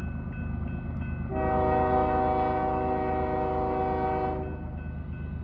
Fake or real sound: real